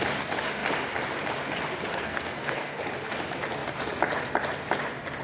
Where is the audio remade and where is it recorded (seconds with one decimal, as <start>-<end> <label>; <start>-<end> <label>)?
0.0-1.9 recorded; 1.9-2.8 remade; 2.8-5.2 recorded